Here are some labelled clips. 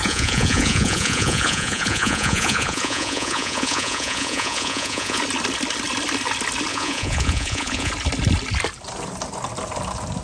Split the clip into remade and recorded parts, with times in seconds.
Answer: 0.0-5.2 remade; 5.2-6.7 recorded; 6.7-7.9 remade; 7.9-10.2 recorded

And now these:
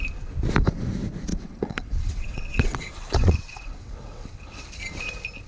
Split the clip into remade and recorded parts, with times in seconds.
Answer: 0.0-1.3 recorded; 1.3-4.6 remade; 4.6-5.5 recorded

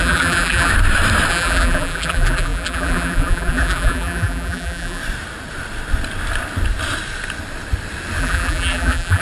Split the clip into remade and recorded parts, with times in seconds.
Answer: 0.0-0.7 remade; 0.7-1.3 recorded; 1.3-5.0 remade; 5.0-8.2 recorded; 8.2-9.2 remade

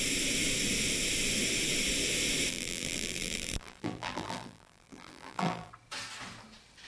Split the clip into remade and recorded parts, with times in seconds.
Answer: 0.0-2.5 recorded; 2.5-5.7 remade; 5.7-6.9 recorded